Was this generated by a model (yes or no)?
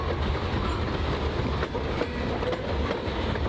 no